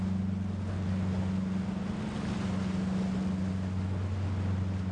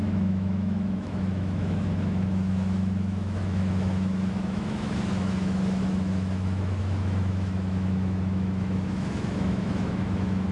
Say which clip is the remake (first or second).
second